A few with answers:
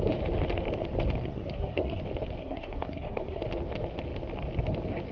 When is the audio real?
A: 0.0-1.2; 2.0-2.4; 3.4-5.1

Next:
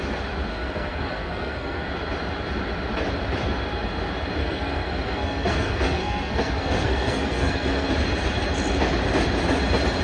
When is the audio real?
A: 0.0-0.5; 1.9-4.4; 7.9-10.0

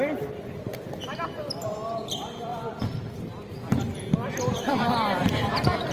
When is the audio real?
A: 0.0-5.9